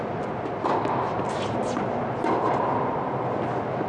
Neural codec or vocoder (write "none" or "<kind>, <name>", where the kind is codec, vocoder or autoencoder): none